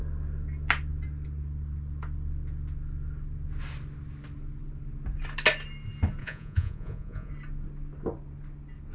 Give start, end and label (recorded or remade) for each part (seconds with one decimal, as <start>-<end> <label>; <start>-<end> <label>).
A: 0.0-6.2 recorded; 6.2-7.3 remade; 7.3-8.9 recorded